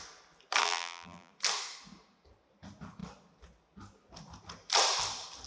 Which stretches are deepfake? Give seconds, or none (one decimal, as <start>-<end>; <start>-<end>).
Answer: 0.6-1.3